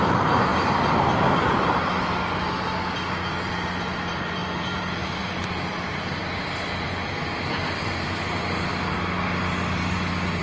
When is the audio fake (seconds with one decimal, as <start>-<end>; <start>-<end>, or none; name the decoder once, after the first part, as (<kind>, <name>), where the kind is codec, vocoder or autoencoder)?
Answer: 0.0-0.5 (vocoder, BigVGAN v2); 3.3-6.2; 7.1-8.7